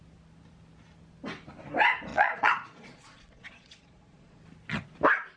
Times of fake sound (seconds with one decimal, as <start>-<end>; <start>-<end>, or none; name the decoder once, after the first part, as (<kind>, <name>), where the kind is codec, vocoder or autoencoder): 2.1-4.4 (vocoder, Vocos)